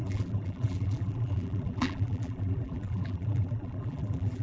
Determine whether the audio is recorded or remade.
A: remade